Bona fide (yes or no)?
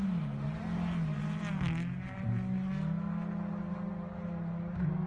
yes